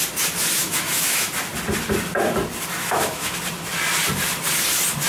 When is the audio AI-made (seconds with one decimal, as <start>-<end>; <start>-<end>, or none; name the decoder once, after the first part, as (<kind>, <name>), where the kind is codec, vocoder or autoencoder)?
0.6-1.3 (autoencoder, DAC-VAE); 2.8-3.4